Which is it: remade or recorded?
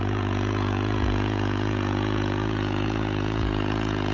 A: remade